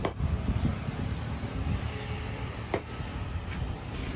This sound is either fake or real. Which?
real